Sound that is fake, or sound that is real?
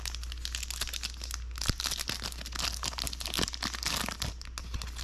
real